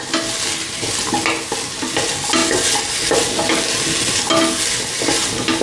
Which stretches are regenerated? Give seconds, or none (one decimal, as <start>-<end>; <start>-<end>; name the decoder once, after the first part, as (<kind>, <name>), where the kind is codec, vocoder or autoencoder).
none